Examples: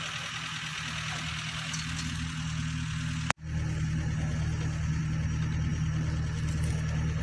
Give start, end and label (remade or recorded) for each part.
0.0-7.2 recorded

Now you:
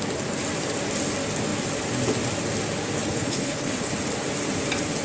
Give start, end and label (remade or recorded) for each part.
0.0-3.1 recorded; 3.1-3.9 remade; 3.9-5.0 recorded

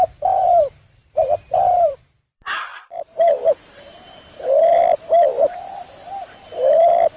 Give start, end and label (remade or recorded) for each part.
0.0-7.2 remade

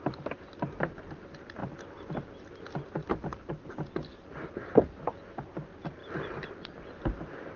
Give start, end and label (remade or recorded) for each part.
0.0-1.6 recorded; 1.6-2.1 remade; 2.1-6.0 recorded; 6.0-6.6 remade; 6.6-7.6 recorded

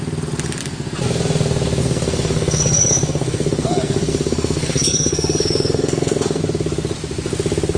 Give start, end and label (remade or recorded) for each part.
0.0-1.8 recorded; 1.8-6.4 remade; 6.4-7.8 recorded

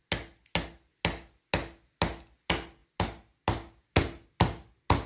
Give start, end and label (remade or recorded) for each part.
0.0-5.1 recorded

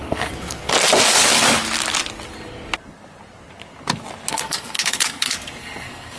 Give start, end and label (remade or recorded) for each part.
0.0-0.6 remade; 0.6-4.3 recorded; 4.3-6.2 remade